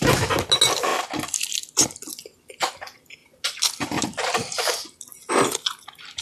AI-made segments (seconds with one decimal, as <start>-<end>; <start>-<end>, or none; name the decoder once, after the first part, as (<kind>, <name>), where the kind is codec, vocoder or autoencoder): none